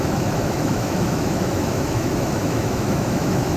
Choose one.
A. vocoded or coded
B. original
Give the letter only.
A